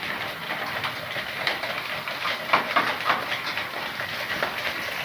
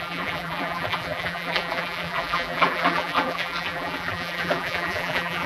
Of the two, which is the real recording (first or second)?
first